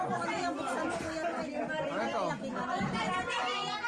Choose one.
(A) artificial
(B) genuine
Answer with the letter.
B